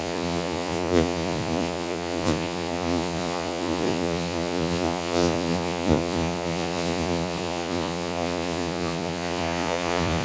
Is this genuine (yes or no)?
no